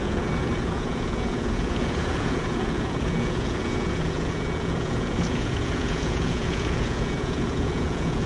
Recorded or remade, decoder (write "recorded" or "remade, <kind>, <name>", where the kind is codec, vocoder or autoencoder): remade, vocoder, Vocos